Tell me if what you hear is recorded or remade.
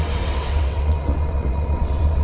remade